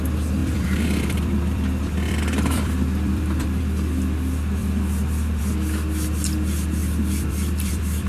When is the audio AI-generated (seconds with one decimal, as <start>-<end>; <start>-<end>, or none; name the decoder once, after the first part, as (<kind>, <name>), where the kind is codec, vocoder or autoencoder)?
0.4-3.6 (vocoder, BigVGAN v2); 4.6-5.4; 6.8-8.1

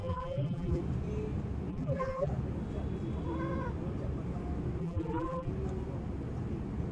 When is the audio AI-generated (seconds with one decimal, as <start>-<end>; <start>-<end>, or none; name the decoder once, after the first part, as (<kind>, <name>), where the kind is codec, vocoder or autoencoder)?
0.0-0.8 (vocoder, BigVGAN v2); 1.7-2.3; 4.8-5.5

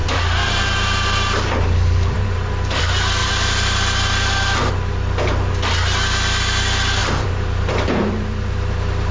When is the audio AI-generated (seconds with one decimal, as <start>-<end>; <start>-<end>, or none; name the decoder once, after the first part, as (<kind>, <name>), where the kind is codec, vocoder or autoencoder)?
0.0-2.8 (vocoder, BigVGAN v2); 3.2-4.7; 7.0-9.1

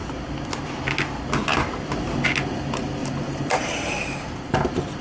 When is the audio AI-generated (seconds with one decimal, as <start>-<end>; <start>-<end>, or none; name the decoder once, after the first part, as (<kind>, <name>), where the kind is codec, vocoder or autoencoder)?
3.0-4.5 (vocoder, BigVGAN v2)

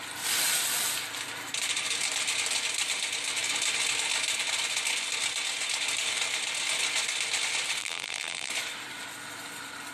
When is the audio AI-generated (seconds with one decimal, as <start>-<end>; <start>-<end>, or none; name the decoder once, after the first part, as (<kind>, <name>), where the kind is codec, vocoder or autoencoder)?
7.8-8.5 (vocoder, BigVGAN v2)